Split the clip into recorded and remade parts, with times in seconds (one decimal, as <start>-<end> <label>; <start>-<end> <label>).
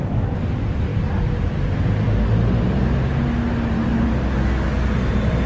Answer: 0.0-5.5 recorded